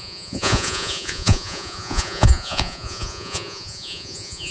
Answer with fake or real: fake